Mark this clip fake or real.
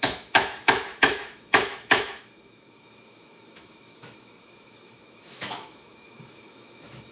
fake